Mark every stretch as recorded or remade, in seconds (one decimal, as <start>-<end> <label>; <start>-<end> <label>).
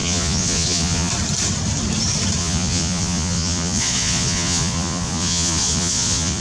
0.0-1.1 remade; 1.1-2.4 recorded; 2.4-6.4 remade